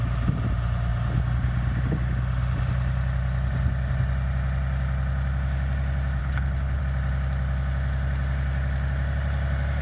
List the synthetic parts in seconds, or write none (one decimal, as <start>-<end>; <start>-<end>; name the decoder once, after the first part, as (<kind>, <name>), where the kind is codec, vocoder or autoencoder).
6.2-6.8 (codec, HILCodec)